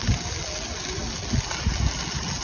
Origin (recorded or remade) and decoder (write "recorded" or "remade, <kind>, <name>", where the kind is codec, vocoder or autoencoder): recorded